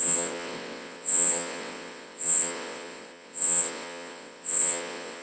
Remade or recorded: remade